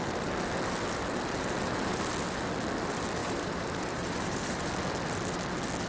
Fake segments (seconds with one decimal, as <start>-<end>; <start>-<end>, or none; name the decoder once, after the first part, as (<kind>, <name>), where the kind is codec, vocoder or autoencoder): 3.2-4.7 (vocoder, BigVGAN v2)